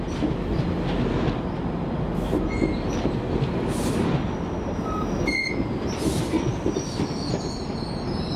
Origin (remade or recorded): recorded